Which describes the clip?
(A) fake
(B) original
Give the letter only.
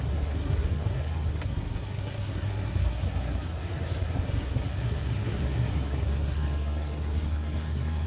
A